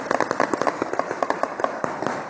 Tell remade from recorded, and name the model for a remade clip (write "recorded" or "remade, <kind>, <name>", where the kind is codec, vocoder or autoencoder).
recorded